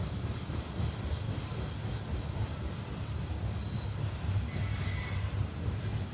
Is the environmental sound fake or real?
real